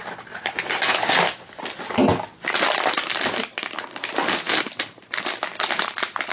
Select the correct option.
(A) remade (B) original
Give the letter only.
B